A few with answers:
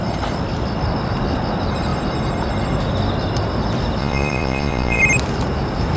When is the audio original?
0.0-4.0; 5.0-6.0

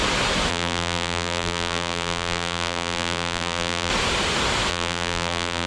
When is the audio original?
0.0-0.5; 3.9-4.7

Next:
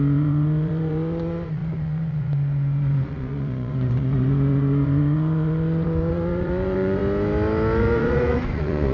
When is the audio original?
7.0-7.8

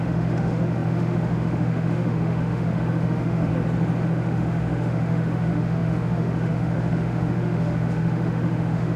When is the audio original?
3.5-4.1

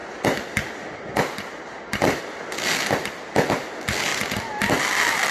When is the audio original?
0.0-4.1; 4.6-5.3

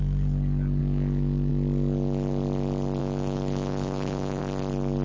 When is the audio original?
0.0-0.8; 1.5-3.0; 4.4-5.0

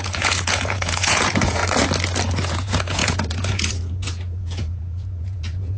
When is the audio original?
1.6-2.5